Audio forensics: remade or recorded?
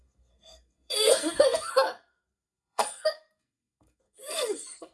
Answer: remade